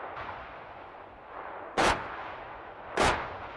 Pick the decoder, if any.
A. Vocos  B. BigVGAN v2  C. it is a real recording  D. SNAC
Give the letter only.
A